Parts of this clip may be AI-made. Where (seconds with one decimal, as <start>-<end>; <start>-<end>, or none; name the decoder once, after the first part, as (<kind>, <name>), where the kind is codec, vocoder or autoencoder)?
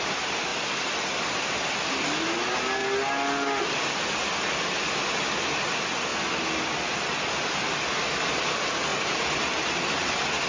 0.0-0.5 (vocoder, BigVGAN v2); 1.2-2.8; 3.6-6.1; 8.3-8.9; 9.5-10.5